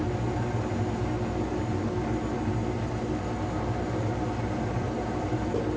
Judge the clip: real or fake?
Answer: real